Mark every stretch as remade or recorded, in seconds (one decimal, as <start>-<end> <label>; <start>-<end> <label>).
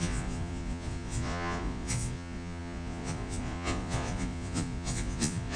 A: 0.0-5.6 remade